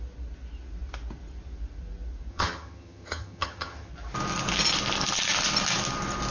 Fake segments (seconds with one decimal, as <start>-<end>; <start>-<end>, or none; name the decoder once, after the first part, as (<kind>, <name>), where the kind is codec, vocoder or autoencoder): 2.3-3.9 (vocoder, HiFi-GAN)